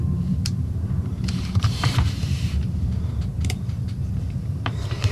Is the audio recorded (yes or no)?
no